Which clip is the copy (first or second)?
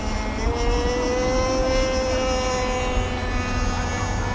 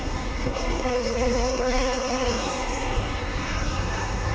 second